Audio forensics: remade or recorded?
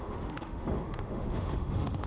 remade